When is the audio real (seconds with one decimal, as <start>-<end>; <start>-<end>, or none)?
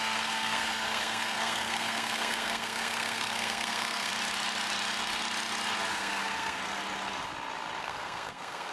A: 4.1-5.9; 6.6-7.8